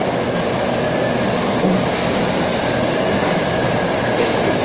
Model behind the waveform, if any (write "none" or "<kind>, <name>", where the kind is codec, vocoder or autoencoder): none